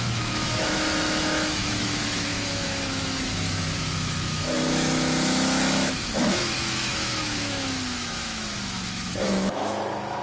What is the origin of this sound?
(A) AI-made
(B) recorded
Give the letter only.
A